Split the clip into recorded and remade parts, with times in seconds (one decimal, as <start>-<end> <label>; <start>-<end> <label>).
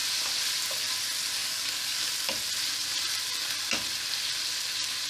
0.0-1.4 recorded; 1.4-2.1 remade; 2.1-5.1 recorded